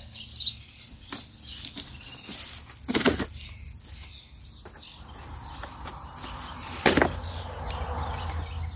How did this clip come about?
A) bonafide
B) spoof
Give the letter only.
A